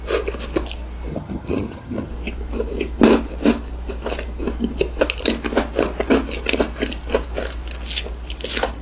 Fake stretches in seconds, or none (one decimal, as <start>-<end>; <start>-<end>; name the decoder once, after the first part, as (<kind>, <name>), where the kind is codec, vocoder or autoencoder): 1.1-2.1 (vocoder, HiFi-GAN)